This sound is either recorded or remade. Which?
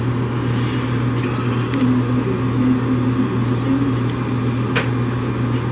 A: recorded